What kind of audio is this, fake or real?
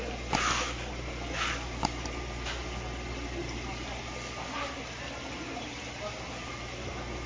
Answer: real